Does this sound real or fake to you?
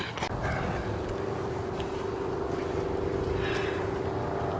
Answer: real